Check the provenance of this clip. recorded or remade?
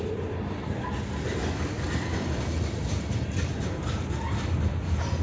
recorded